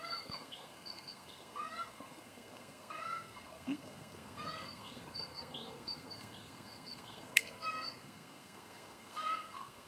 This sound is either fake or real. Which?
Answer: fake